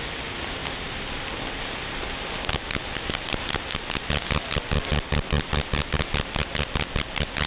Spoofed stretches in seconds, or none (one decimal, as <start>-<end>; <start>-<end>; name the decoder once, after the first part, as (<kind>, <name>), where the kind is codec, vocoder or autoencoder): none